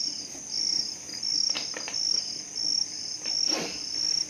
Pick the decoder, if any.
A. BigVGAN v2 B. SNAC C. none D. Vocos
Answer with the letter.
C